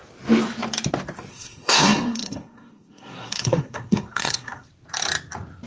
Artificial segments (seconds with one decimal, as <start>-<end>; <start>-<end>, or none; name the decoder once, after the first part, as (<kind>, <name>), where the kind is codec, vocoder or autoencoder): 1.3-4.7 (codec, SNAC)